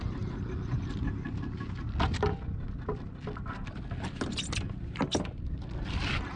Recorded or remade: recorded